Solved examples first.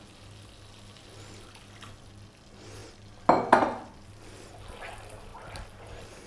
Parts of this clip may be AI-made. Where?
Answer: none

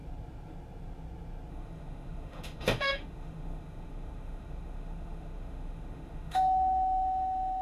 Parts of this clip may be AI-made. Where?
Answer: 1.5-7.6